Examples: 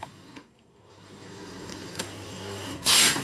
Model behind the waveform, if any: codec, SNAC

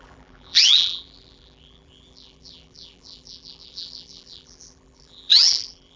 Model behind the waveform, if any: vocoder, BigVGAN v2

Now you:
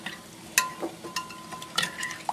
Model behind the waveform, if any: none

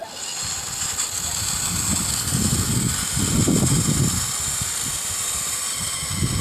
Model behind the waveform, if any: none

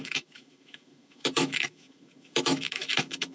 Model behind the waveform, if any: autoencoder, DAC-VAE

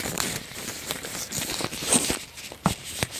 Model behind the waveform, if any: vocoder, BigVGAN v2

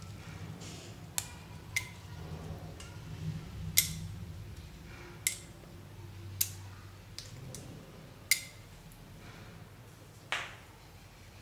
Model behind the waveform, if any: none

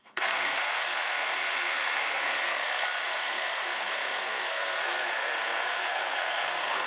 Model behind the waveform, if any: codec, SNAC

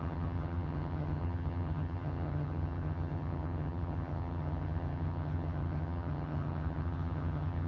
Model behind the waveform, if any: vocoder, HiFi-GAN